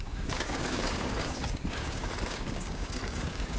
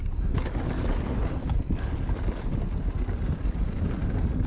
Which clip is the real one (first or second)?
second